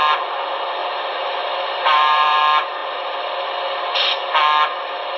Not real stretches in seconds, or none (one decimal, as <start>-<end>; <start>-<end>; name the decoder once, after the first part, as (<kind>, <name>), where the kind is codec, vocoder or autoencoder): 0.8-2.4 (vocoder, BigVGAN v2)